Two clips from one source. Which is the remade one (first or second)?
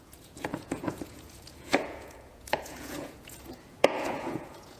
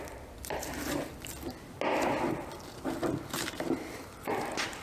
first